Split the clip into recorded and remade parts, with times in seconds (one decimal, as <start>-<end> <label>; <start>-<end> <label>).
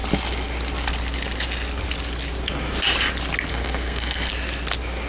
0.0-3.5 recorded; 3.5-4.3 remade; 4.3-5.1 recorded